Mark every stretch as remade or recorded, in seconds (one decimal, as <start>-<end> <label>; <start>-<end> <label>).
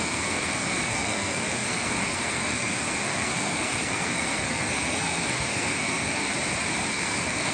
0.0-6.3 remade; 6.3-6.9 recorded; 6.9-7.5 remade